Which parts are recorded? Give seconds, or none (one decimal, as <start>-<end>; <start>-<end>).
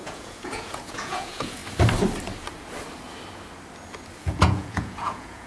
1.6-4.2